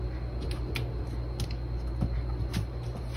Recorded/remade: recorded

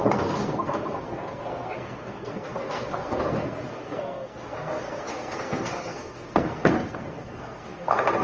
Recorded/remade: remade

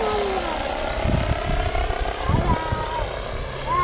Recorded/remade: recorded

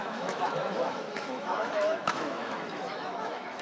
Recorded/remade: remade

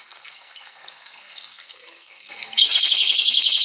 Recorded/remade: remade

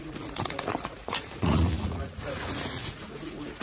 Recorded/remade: remade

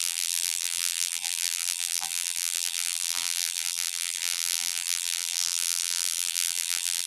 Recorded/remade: remade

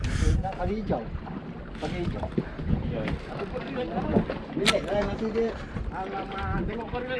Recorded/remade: recorded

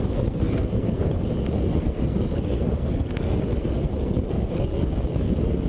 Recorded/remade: remade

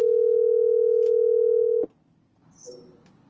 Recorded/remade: recorded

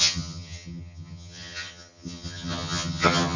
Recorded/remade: remade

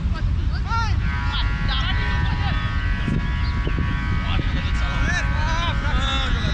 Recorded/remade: recorded